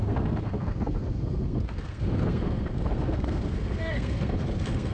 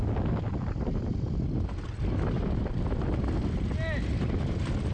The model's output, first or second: first